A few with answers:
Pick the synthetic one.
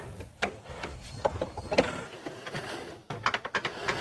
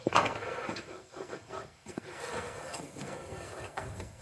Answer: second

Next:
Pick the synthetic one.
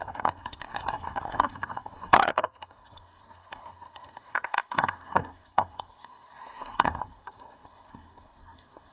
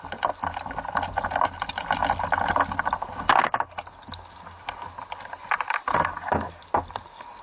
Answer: first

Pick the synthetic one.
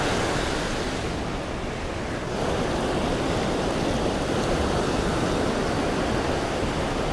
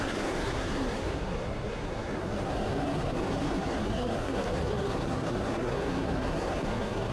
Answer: second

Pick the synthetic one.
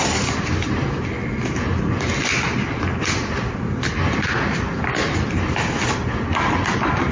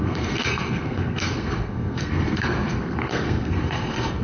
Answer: second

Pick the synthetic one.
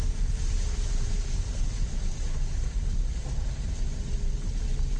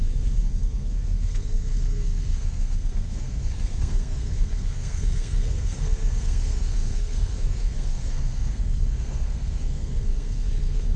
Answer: second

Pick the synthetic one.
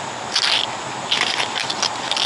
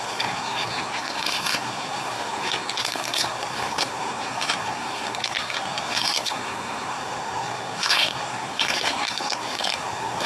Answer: second